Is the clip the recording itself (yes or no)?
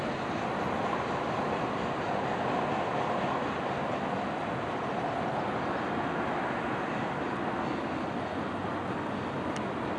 yes